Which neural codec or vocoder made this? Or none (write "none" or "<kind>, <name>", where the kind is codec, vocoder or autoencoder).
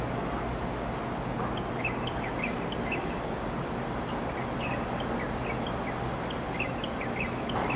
none